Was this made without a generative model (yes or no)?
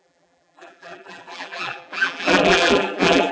no